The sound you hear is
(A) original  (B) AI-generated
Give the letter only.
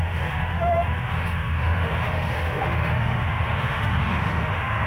B